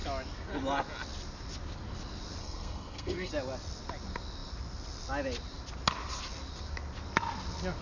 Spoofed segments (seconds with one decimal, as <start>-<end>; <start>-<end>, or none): 2.4-3.3